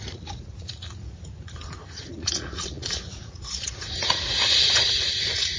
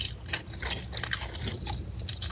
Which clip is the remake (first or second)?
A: first